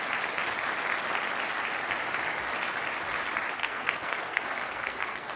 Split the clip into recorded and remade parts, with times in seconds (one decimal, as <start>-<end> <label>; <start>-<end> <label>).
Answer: 0.0-3.6 recorded; 3.6-5.4 remade